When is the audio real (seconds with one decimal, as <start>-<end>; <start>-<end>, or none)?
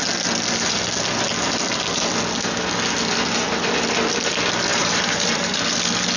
0.0-4.7; 5.5-6.2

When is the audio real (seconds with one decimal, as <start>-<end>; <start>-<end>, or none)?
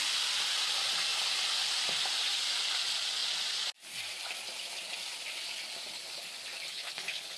0.0-6.7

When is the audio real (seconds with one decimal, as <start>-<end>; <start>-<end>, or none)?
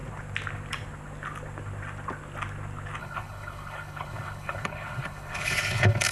0.0-3.0